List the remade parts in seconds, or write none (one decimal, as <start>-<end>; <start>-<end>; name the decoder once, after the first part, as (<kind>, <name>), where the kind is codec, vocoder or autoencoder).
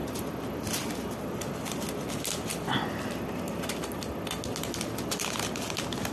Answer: 0.0-0.9 (vocoder, BigVGAN v2)